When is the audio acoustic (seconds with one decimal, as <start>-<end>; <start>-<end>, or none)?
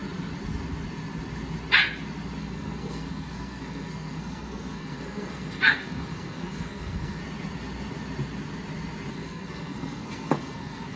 0.0-2.4; 7.2-9.1